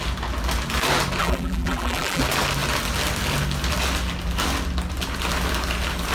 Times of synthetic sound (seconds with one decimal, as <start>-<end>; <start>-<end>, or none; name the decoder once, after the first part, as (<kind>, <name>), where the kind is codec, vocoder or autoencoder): 1.2-2.2 (vocoder, BigVGAN v2)